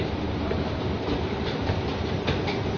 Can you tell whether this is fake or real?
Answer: real